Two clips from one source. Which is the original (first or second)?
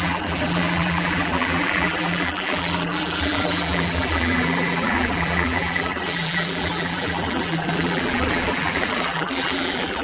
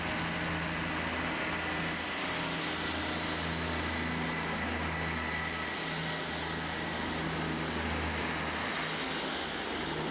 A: second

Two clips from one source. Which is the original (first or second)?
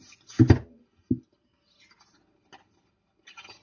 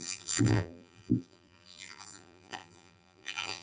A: first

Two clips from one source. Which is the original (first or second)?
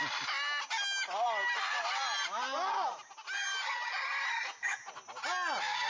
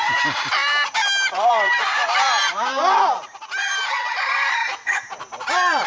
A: first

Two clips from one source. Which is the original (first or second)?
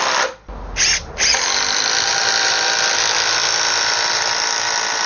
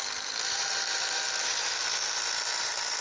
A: first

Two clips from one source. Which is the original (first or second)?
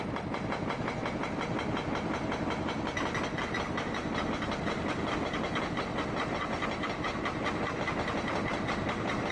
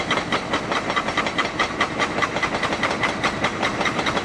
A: first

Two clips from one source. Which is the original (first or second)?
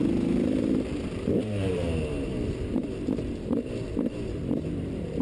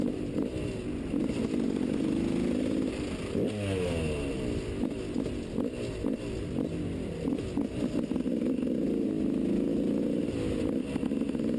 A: second